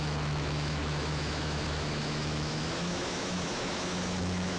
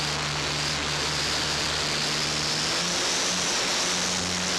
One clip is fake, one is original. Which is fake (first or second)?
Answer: first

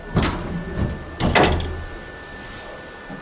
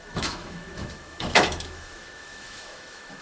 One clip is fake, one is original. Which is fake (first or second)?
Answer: second